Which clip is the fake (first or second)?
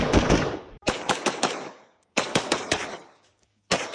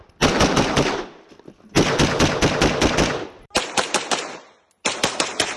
first